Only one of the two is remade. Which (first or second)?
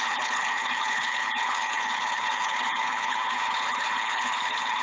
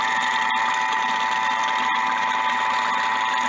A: first